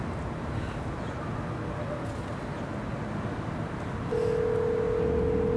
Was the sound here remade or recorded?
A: recorded